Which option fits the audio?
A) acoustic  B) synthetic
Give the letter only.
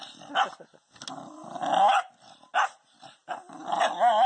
A